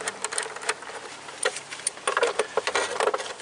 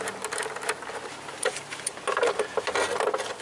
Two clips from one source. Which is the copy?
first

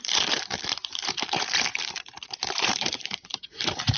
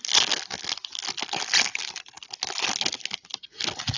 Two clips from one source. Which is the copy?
first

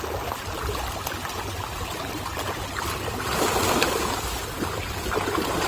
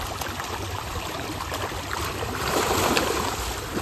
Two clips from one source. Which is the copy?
second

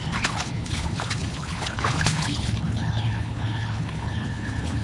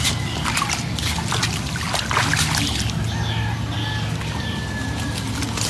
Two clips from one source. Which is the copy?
first